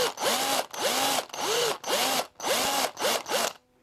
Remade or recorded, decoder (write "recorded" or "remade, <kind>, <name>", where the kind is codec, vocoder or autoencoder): recorded